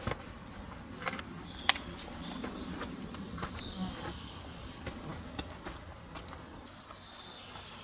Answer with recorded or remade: recorded